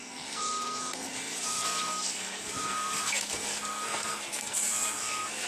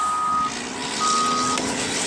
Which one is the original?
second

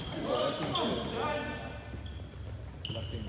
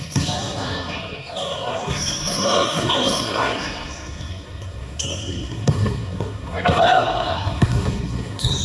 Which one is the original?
first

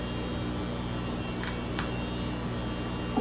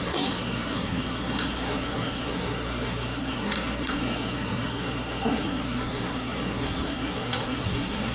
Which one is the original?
first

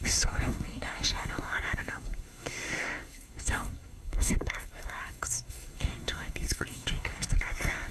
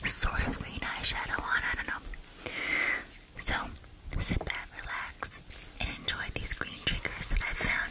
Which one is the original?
second